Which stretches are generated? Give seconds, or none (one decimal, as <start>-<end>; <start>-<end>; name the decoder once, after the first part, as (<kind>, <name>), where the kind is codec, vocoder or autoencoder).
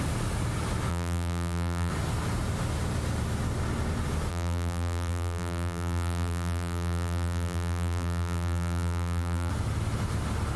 0.9-1.9 (vocoder, BigVGAN v2); 4.3-9.5